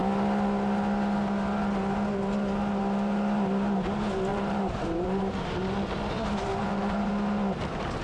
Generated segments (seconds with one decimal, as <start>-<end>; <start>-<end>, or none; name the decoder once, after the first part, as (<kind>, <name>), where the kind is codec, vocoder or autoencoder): 4.3-5.3 (vocoder, BigVGAN v2); 6.5-7.1